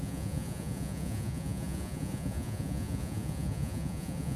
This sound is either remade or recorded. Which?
remade